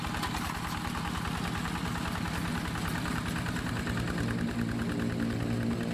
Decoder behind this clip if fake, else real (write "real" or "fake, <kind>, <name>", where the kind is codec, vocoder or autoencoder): real